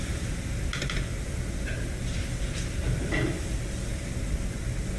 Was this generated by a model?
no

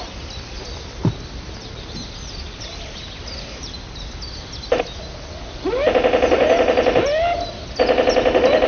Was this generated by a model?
no